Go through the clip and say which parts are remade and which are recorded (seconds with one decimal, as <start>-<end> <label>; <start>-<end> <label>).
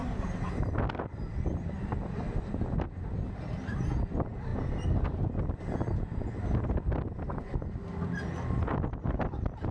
0.0-1.3 recorded; 1.3-2.3 remade; 2.3-9.7 recorded